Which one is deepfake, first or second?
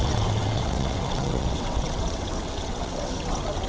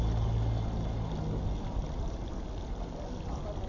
first